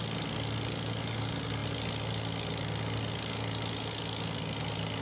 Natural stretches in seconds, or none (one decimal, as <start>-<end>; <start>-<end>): 0.0-5.0